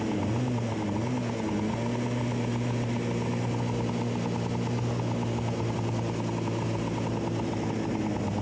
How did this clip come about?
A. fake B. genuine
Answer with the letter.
B